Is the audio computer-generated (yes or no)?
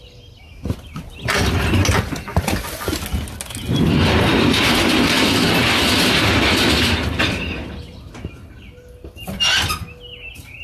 no